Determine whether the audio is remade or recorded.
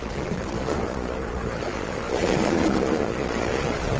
remade